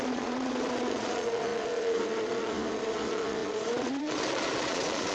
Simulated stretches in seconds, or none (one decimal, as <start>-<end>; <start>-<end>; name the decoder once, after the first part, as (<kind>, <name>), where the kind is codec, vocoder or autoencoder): 0.0-5.1 (vocoder, Vocos)